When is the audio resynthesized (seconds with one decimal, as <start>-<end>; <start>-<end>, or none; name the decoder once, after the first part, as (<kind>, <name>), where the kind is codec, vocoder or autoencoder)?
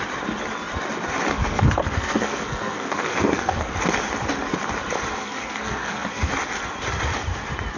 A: 1.3-3.7 (codec, SNAC); 5.2-6.3